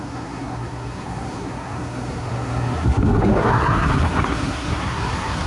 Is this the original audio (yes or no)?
no